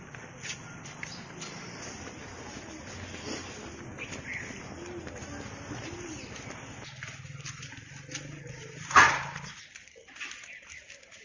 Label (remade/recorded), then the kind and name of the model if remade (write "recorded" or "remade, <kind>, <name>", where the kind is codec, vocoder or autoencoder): recorded